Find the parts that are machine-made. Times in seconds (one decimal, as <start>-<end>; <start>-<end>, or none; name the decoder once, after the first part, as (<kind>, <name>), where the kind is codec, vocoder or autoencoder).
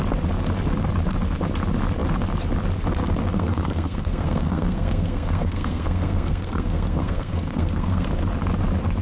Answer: 3.3-8.1 (codec, SNAC)